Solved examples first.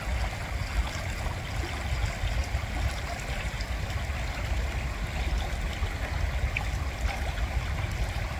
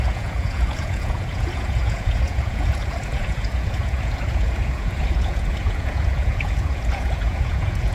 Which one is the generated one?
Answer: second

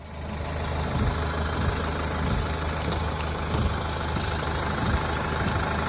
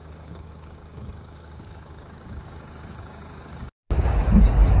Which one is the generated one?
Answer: second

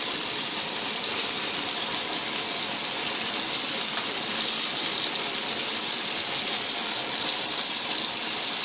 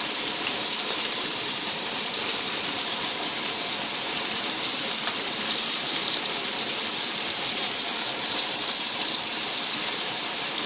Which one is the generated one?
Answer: second